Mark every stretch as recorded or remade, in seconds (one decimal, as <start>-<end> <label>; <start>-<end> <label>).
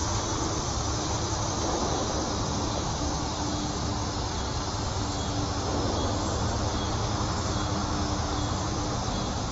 0.0-2.6 remade; 2.6-9.5 recorded